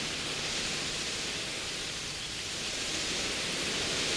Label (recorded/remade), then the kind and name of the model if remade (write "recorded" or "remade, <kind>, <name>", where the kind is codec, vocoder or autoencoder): recorded